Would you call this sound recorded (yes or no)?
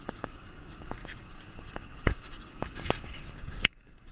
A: no